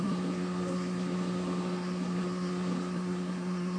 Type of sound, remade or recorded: remade